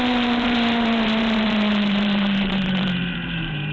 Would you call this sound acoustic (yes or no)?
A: no